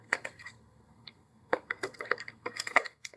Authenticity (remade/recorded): remade